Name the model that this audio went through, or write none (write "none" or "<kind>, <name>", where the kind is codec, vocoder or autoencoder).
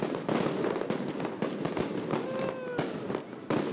none